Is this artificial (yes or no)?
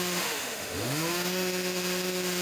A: yes